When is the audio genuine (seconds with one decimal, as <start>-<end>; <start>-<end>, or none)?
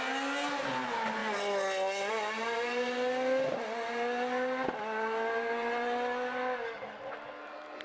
0.0-7.8